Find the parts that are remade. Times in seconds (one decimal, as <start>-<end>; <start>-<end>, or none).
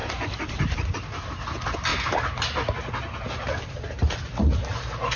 none